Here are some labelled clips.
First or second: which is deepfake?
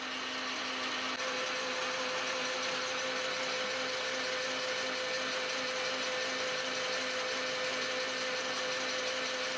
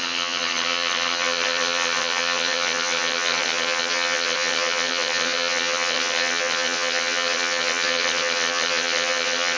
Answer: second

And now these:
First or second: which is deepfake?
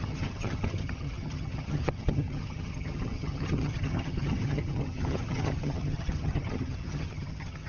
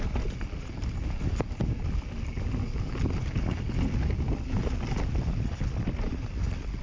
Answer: first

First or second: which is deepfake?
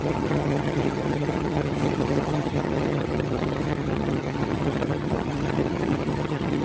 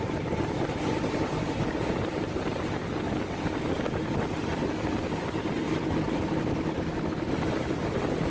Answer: first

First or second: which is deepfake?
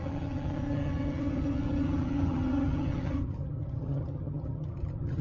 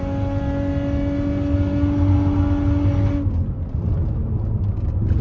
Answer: first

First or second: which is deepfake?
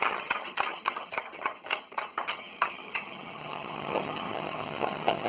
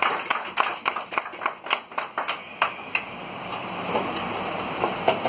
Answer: first